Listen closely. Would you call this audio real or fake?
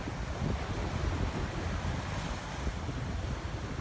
real